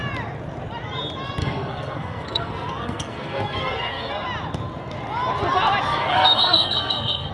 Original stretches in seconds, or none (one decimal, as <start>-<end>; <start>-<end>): 0.0-1.4; 4.1-5.9